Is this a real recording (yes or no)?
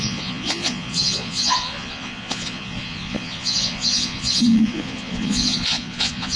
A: no